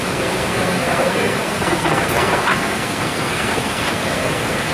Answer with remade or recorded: remade